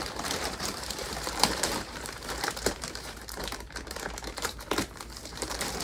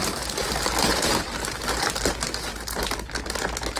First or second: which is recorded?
second